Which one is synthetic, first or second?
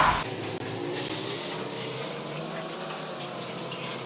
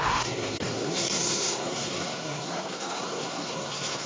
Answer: second